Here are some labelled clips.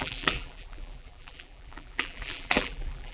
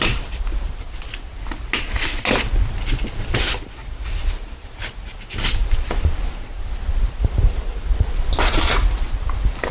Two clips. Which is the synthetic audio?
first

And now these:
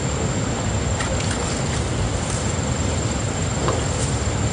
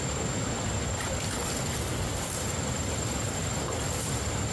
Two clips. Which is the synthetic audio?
second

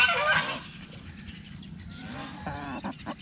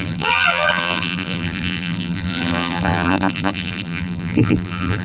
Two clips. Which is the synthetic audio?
second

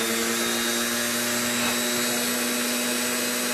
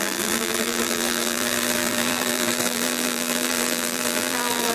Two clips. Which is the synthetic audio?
second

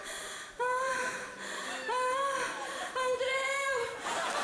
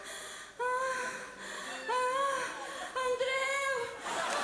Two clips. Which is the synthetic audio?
first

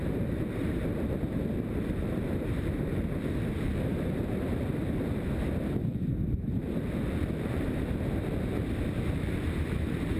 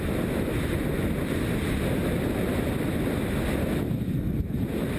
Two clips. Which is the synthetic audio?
first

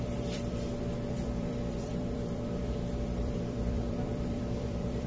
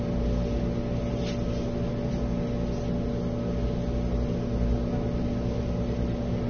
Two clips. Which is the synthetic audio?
first